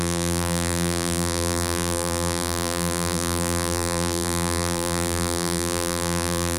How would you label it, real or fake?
fake